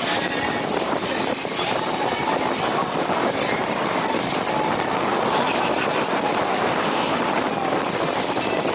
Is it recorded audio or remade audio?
recorded